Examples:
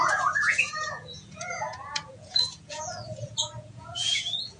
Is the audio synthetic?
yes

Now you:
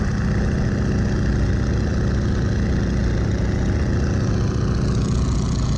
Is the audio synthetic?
no